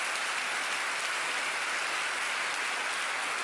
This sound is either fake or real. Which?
real